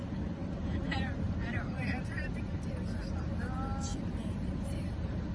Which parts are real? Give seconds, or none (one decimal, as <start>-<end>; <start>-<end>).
0.0-0.4; 2.6-3.9